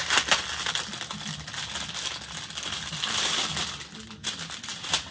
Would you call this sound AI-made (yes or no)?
no